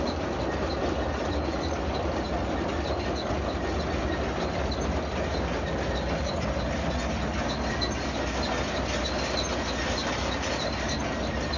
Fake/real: real